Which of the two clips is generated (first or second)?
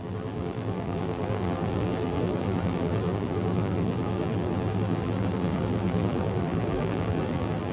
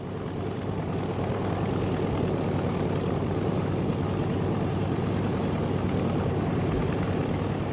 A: first